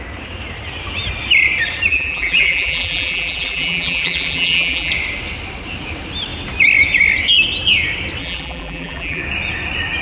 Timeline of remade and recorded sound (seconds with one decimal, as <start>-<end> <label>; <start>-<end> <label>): 0.0-1.9 recorded; 1.9-4.9 remade; 4.9-8.2 recorded; 8.2-9.2 remade; 9.2-10.0 recorded